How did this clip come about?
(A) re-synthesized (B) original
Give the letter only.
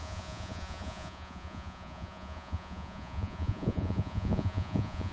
A